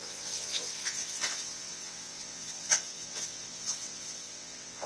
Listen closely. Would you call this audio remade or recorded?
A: remade